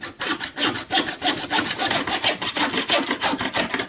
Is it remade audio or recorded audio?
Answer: recorded